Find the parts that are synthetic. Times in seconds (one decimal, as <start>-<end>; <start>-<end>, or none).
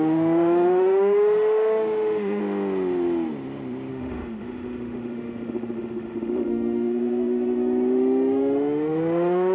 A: 0.0-2.4; 3.9-9.5